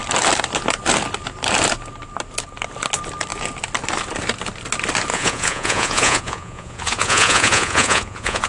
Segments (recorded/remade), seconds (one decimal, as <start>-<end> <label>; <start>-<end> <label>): 0.0-5.1 recorded; 5.1-8.5 remade